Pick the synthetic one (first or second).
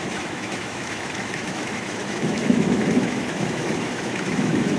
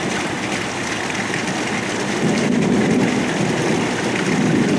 first